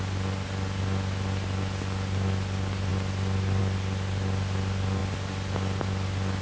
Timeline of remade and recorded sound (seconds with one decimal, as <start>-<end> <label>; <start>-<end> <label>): 0.0-6.4 recorded